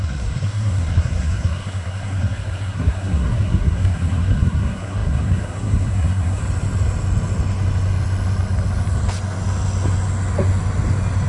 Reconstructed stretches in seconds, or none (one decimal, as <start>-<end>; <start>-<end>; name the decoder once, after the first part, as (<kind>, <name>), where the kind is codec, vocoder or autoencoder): 0.0-6.4 (codec, SNAC)